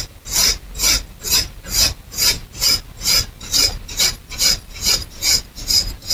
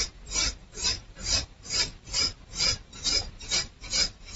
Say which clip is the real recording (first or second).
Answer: first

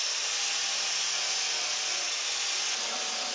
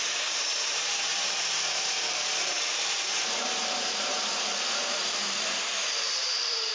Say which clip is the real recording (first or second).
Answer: first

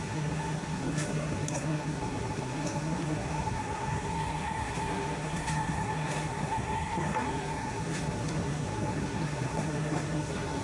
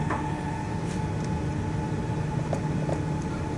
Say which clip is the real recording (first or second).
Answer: second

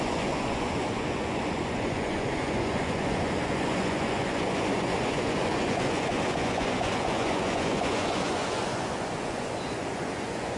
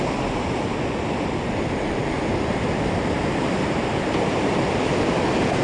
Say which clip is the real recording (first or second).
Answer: second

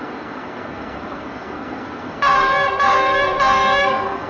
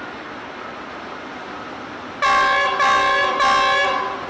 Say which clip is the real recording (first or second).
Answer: second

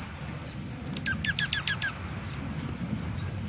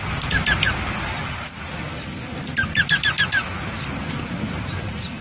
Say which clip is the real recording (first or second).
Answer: first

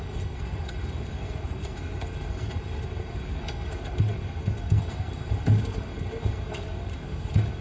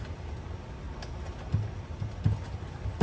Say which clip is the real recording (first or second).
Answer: second